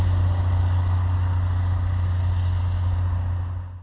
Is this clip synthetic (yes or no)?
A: no